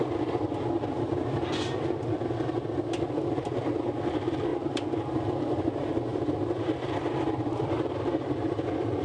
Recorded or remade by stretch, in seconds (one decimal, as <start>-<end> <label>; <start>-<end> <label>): 0.0-6.1 recorded; 6.1-9.0 remade